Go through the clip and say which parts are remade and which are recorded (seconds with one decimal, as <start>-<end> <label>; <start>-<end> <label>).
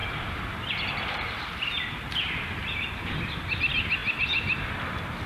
0.0-3.2 remade; 3.2-5.3 recorded